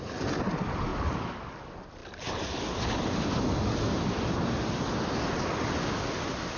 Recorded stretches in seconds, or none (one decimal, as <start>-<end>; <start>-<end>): 0.0-6.6